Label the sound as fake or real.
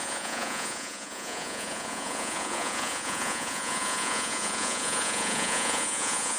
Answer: fake